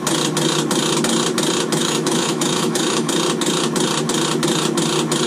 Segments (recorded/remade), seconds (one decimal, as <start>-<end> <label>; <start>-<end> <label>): 0.0-1.8 recorded; 1.8-3.1 remade; 3.1-5.3 recorded